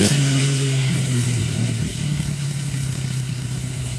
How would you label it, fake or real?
fake